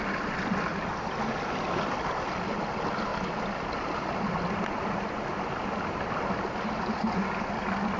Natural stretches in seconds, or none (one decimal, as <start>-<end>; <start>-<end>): 0.0-8.0